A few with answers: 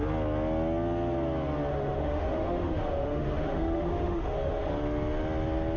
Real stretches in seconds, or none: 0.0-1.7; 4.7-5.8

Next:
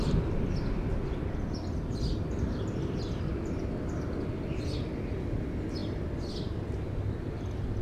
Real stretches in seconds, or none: 0.0-7.8

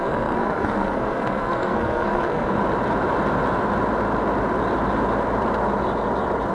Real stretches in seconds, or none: 2.6-6.5

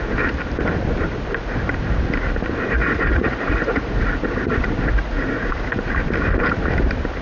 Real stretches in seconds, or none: 0.0-2.8; 5.9-7.2

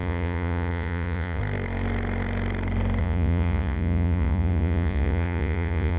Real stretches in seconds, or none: 1.4-3.0

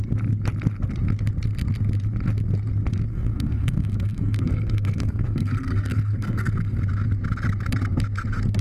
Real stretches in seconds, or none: 0.0-3.1; 6.8-8.6

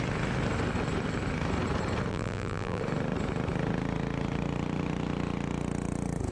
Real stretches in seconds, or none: 0.0-2.1; 2.8-6.3

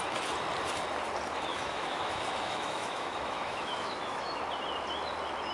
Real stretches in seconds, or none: 0.0-1.5; 4.4-5.5